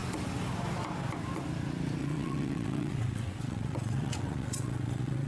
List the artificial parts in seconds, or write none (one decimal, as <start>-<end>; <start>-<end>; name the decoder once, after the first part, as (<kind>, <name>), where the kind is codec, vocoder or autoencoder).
2.0-5.3 (vocoder, WaveNeXt)